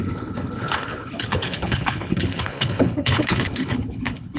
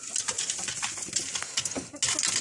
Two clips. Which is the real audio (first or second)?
second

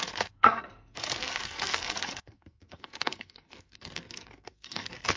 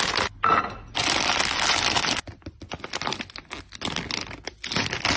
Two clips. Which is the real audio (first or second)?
second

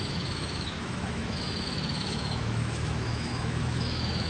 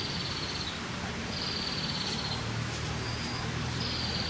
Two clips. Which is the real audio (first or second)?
second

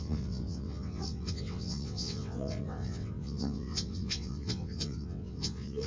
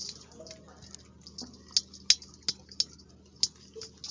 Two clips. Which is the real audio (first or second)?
second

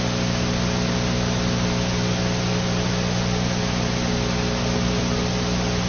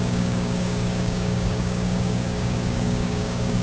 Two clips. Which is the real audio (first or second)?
first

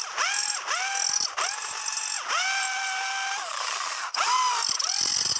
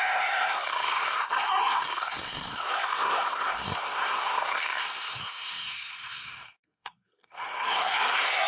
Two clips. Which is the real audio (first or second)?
first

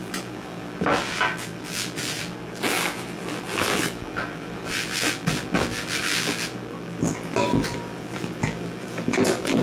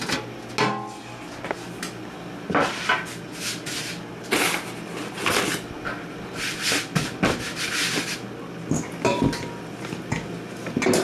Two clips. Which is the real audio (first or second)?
second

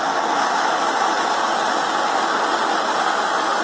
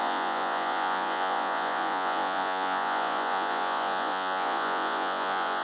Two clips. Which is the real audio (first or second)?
first